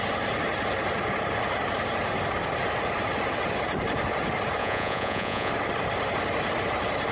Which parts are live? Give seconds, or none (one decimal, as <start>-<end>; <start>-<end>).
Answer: 0.0-4.6; 5.5-7.1